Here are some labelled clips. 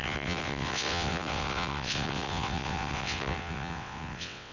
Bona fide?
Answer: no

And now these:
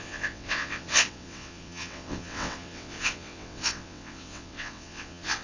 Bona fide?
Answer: no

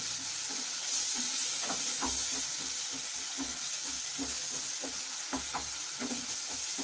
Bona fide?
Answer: yes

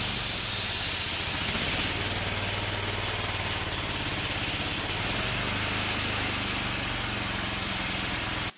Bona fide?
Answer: yes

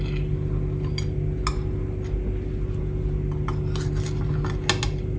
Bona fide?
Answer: yes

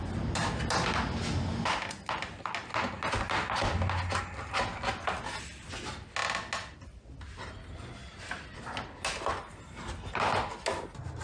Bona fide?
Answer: yes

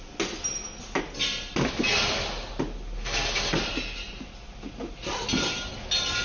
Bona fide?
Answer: yes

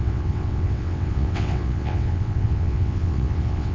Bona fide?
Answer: no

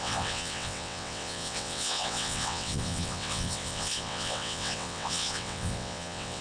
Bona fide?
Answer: no